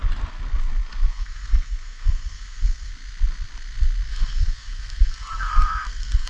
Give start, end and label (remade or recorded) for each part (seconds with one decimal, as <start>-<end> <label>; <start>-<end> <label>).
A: 0.0-1.1 recorded; 1.1-2.9 remade; 2.9-4.1 recorded; 4.1-6.3 remade